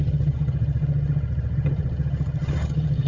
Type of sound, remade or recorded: remade